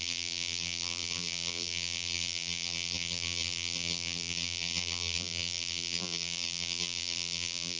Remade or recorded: remade